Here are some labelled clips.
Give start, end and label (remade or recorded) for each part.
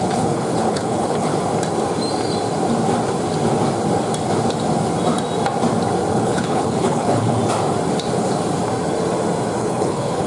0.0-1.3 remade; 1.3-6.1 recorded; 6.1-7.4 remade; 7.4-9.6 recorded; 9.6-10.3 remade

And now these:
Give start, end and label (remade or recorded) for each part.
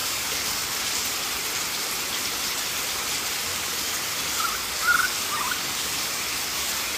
0.0-0.8 remade; 0.8-3.5 recorded; 3.5-7.0 remade